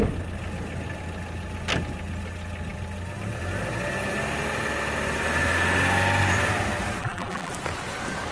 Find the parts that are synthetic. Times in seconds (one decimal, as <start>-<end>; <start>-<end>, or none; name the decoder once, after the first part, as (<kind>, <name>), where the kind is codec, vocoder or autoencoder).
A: 7.0-7.5 (vocoder, BigVGAN v2)